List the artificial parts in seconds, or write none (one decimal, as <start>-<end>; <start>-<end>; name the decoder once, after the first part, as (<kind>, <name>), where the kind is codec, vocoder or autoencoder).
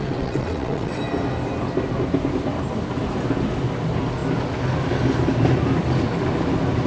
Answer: 0.0-1.0 (vocoder, WaveNeXt)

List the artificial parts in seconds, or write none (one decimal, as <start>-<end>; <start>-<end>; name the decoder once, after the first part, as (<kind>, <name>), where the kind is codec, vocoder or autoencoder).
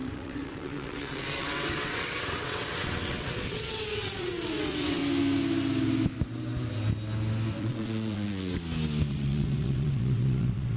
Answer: 0.0-5.0 (vocoder, WaveNeXt); 7.6-8.5; 9.1-10.8